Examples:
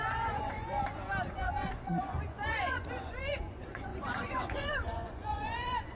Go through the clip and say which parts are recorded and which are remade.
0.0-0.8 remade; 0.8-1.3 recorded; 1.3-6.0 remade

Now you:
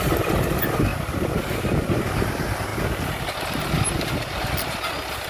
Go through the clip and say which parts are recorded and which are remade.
0.0-5.3 recorded

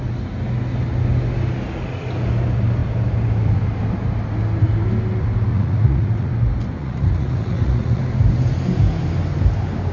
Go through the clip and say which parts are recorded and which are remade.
0.0-5.5 recorded; 5.5-6.3 remade; 6.3-6.8 recorded; 6.8-8.0 remade; 8.0-9.9 recorded

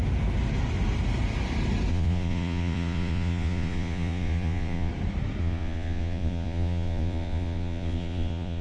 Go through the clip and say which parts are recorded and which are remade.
0.0-1.9 recorded; 1.9-4.9 remade; 4.9-5.4 recorded; 5.4-8.6 remade

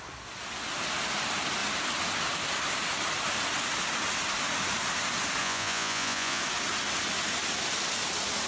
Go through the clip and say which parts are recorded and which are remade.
0.0-5.4 recorded; 5.4-6.4 remade; 6.4-8.5 recorded

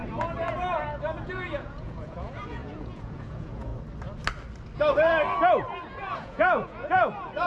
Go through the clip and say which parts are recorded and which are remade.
0.0-1.2 recorded; 1.2-3.7 remade; 3.7-5.9 recorded; 5.9-7.5 remade

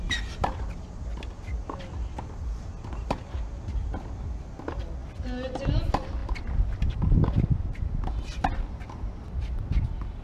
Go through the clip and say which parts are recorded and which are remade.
0.0-10.2 recorded

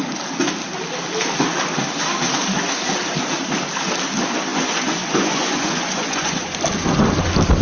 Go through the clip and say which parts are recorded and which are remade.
0.0-4.5 recorded; 4.5-6.6 remade; 6.6-7.6 recorded